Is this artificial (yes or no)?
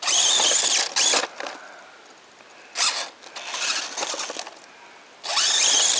no